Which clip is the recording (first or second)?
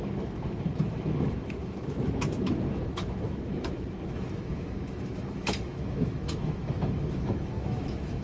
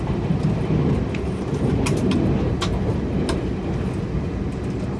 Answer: second